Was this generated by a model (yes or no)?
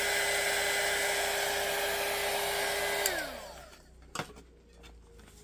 no